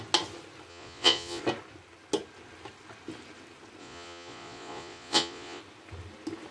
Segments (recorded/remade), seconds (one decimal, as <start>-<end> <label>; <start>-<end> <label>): 0.0-0.7 recorded; 0.7-1.4 remade; 1.4-3.8 recorded; 3.8-5.6 remade; 5.6-6.5 recorded